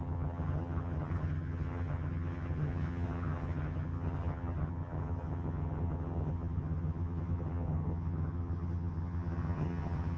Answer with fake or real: fake